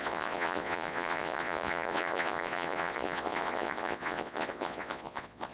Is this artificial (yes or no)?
yes